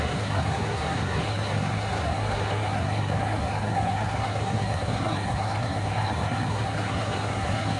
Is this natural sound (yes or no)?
no